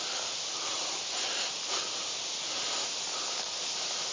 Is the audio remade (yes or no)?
no